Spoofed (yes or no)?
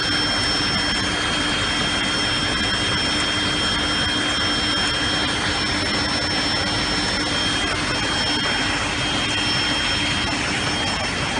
no